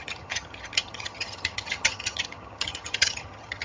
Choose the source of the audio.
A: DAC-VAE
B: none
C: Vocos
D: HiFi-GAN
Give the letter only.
D